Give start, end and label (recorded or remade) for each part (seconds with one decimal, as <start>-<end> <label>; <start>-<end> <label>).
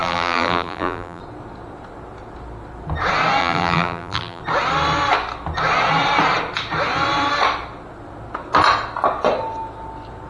0.0-1.2 remade; 1.2-3.4 recorded; 3.4-4.4 remade; 4.4-10.3 recorded